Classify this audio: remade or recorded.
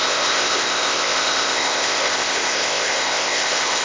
remade